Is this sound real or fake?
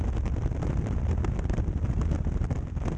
real